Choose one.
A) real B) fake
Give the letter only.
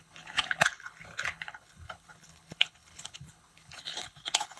B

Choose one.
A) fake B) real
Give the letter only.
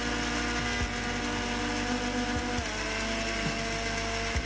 B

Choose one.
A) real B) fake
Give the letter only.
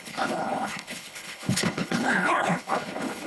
B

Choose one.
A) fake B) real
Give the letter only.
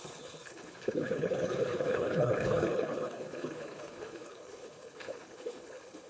A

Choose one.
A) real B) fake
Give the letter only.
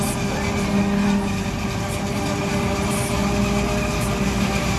A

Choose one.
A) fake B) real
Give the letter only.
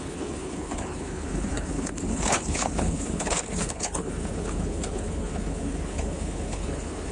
A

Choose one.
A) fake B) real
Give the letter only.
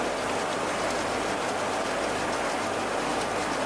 B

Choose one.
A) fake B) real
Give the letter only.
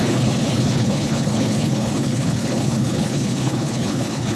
A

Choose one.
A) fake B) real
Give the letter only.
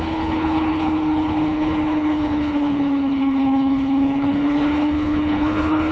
A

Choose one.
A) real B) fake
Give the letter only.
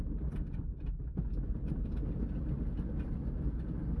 A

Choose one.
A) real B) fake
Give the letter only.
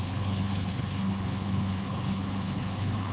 B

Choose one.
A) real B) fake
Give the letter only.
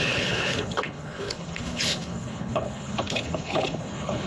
B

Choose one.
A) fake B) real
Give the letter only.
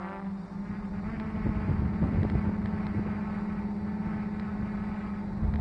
B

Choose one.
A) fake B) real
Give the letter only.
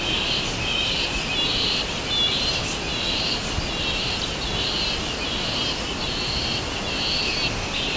B